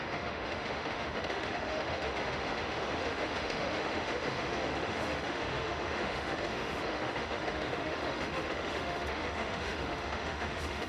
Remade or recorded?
remade